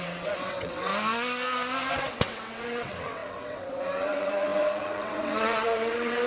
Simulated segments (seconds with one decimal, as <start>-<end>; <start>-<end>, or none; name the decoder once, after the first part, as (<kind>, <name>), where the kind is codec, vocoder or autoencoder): 0.0-0.9 (vocoder, WaveNeXt); 1.9-6.3